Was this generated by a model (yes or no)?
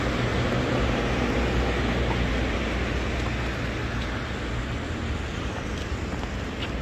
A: no